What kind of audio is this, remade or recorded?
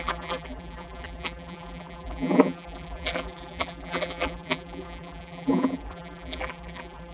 remade